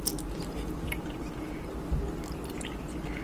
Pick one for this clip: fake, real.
real